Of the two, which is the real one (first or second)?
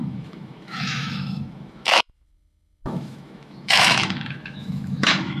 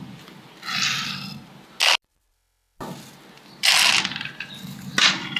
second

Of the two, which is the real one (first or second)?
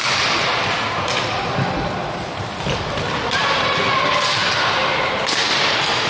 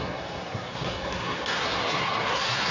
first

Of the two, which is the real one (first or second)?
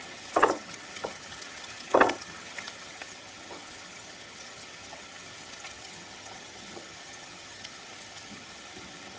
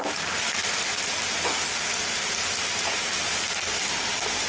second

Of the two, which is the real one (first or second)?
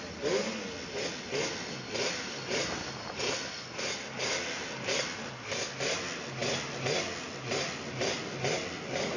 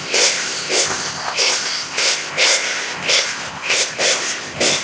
first